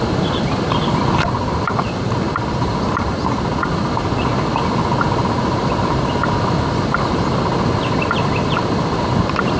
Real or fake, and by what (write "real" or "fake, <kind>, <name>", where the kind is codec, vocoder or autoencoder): real